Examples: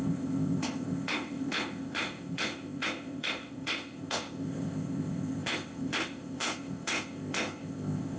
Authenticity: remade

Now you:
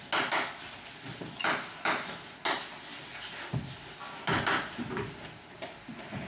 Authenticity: recorded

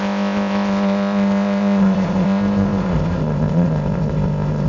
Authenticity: remade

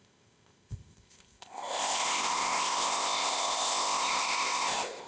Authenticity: remade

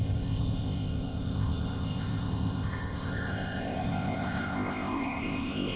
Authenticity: remade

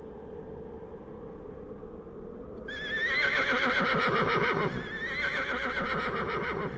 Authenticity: recorded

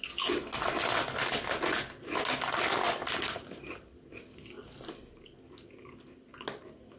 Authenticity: recorded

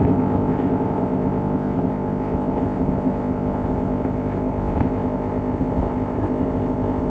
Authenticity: remade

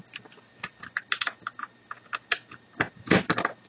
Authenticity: recorded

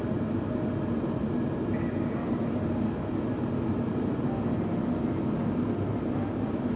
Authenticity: recorded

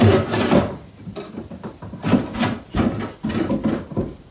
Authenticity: recorded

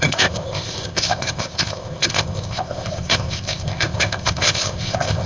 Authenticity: remade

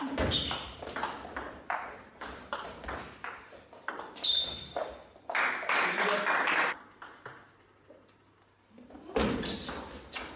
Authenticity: recorded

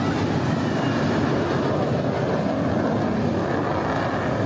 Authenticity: recorded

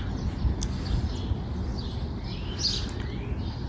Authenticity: recorded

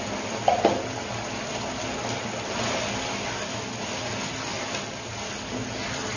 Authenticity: recorded